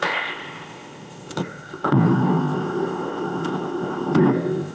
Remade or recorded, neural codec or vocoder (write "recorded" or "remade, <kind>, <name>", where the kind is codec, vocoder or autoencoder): remade, codec, ZipCodec